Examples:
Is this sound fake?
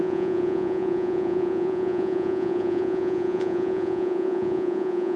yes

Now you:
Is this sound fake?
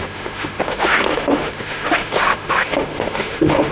yes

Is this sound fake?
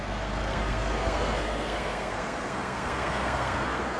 yes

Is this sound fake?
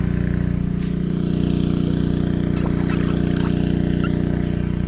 no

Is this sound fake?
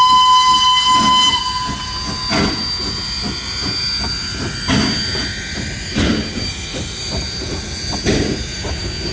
no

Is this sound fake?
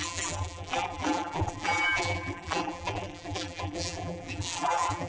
yes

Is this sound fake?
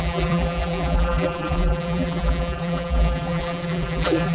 yes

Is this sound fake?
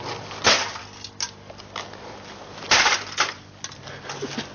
no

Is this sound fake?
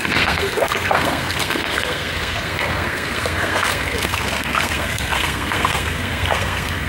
yes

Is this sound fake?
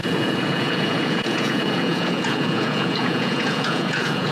yes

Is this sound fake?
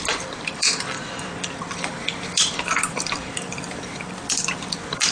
yes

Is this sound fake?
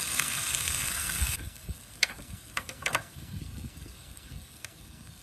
yes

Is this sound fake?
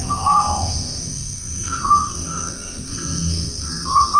yes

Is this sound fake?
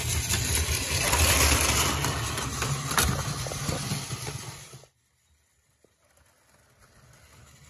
no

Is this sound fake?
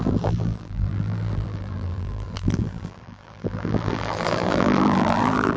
yes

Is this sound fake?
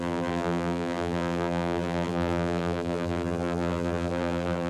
yes